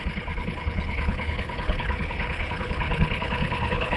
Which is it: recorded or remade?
remade